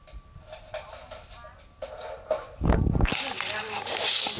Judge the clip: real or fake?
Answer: real